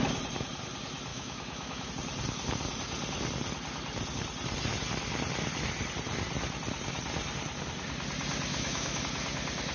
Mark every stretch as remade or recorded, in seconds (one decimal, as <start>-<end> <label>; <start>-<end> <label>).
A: 0.0-1.1 recorded; 1.1-1.9 remade; 1.9-8.5 recorded; 8.5-9.0 remade; 9.0-9.7 recorded